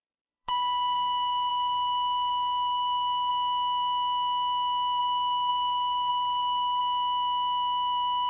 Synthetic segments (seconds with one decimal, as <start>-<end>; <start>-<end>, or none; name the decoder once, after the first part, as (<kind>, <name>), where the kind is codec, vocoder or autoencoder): 0.0-3.3 (codec, DAC); 5.0-6.8